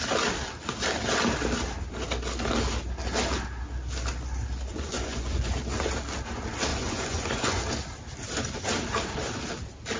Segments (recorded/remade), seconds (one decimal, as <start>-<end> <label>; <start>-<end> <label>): 0.0-4.7 recorded; 4.7-5.5 remade; 5.5-6.7 recorded; 6.7-7.6 remade; 7.6-10.0 recorded